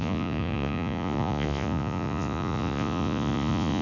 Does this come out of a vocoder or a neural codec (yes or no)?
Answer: yes